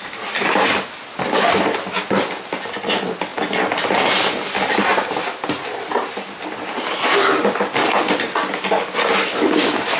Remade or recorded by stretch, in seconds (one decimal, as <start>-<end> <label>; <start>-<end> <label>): 0.0-10.0 recorded